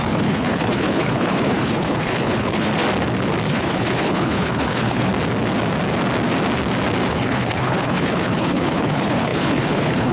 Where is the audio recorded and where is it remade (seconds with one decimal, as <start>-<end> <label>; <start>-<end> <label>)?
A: 0.0-2.7 remade; 2.7-3.5 recorded; 3.5-5.1 remade; 5.1-7.1 recorded; 7.1-10.1 remade